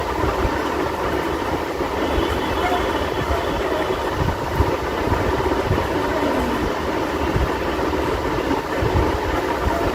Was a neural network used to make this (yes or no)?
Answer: no